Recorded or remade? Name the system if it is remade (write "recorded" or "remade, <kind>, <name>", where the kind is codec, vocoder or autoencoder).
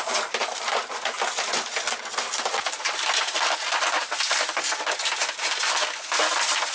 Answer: remade, vocoder, BigVGAN v2